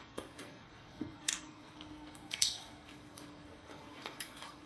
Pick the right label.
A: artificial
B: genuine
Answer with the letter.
A